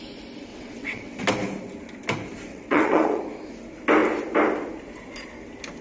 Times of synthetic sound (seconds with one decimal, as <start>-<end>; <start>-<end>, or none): 0.5-1.2; 2.5-3.2